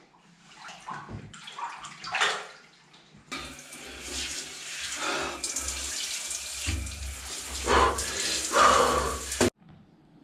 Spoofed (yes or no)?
no